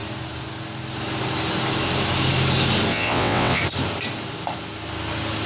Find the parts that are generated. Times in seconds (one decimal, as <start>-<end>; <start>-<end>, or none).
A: 2.9-3.6